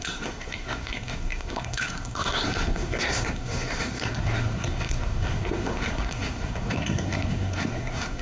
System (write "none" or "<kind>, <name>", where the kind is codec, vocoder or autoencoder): codec, SNAC